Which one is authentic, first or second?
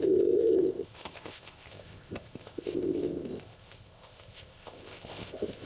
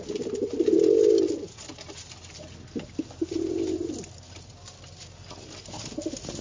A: second